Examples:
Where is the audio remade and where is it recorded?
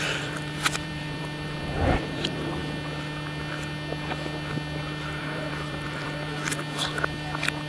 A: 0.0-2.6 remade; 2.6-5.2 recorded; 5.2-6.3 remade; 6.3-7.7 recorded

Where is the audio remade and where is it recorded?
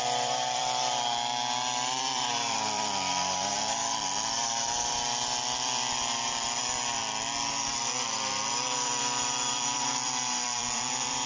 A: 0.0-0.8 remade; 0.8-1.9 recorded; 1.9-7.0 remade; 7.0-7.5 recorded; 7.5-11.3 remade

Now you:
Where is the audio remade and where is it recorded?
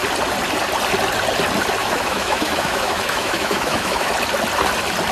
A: 0.0-1.8 recorded; 1.8-4.1 remade; 4.1-5.1 recorded